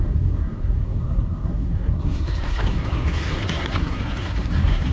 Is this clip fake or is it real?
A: fake